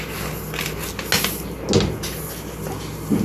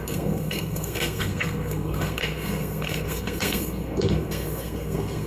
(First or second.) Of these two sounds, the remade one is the second